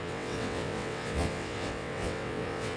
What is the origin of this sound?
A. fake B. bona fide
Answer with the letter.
A